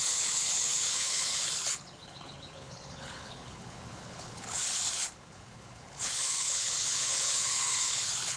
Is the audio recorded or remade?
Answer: remade